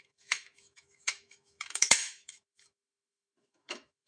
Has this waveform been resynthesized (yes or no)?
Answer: yes